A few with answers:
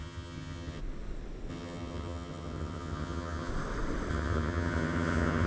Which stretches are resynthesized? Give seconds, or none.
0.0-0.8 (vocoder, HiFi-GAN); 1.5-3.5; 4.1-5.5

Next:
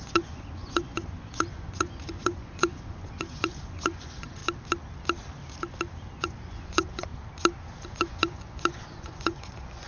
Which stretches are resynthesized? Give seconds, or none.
0.0-4.4 (vocoder, Vocos); 6.2-7.1; 7.9-9.9

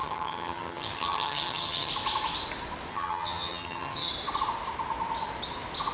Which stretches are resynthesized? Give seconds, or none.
0.0-1.9 (vocoder, HiFi-GAN); 2.9-4.1

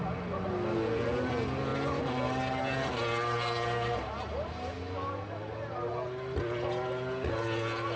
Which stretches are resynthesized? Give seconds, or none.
none

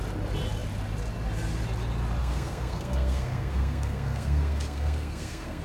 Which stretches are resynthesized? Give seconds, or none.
2.2-5.6 (codec, SNAC)

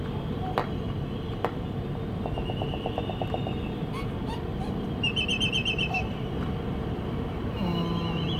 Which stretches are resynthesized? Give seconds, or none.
0.0-0.6 (vocoder, BigVGAN v2); 4.2-6.7